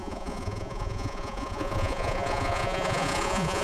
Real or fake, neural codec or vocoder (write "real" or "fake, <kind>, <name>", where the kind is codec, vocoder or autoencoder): fake, vocoder, Vocos